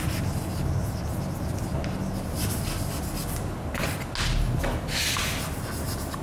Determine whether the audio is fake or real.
real